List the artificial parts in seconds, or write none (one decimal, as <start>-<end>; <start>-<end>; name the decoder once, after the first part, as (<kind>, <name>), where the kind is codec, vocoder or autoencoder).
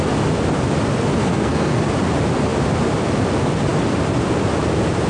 1.2-1.8 (codec, SNAC)